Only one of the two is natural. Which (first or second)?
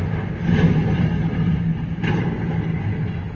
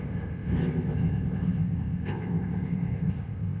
first